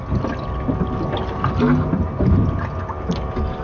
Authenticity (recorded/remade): recorded